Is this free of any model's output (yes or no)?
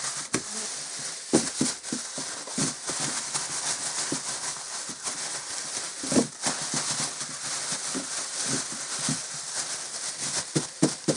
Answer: yes